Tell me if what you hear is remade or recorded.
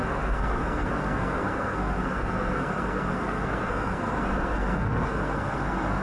remade